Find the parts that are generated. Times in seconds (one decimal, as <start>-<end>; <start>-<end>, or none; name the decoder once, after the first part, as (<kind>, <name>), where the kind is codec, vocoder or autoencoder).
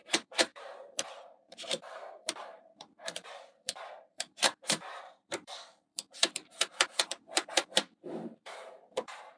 0.0-9.4 (vocoder, BigVGAN v2)